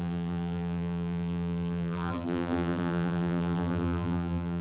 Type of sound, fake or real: fake